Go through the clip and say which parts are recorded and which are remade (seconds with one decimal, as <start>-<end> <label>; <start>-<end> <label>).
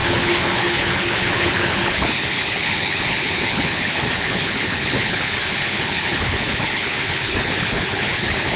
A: 0.0-8.6 remade